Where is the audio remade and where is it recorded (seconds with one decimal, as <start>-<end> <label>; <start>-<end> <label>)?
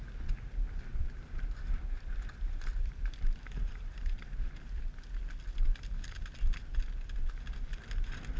0.0-0.9 recorded; 0.9-4.8 remade; 4.8-8.4 recorded